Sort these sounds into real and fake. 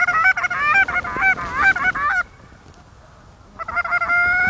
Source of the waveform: real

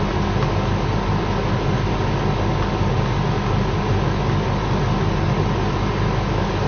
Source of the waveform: real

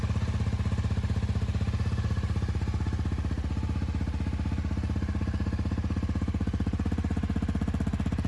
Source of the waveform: real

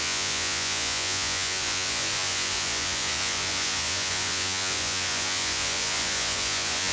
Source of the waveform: fake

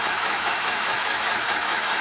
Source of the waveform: fake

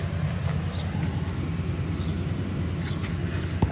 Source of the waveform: real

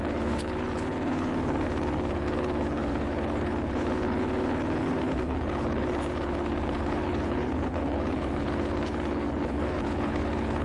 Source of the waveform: fake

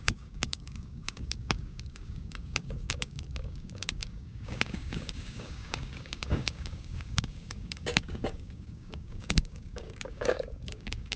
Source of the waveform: fake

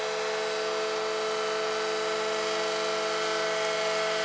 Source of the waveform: real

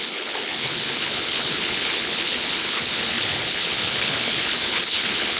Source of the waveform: fake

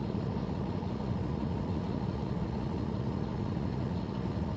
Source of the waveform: fake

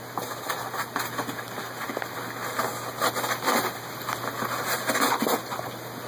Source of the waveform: real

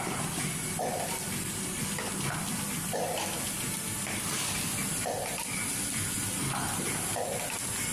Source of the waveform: real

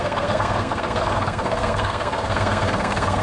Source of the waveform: fake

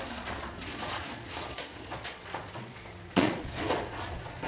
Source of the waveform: fake